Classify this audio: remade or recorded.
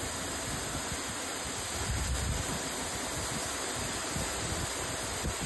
recorded